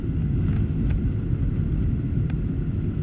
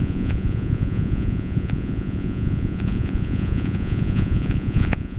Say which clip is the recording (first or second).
first